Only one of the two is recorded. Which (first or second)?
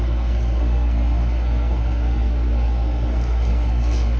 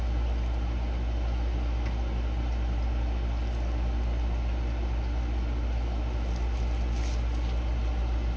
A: second